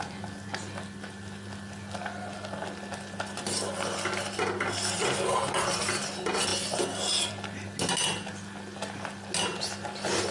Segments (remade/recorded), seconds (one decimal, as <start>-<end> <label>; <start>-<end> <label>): 0.0-10.3 recorded